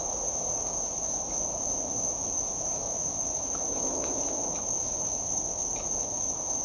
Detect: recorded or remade remade